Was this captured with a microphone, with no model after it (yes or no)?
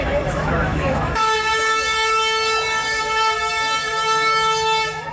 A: no